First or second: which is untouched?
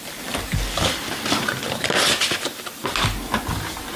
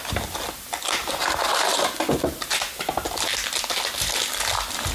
second